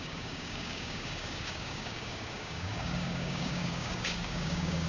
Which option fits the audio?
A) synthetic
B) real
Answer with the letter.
A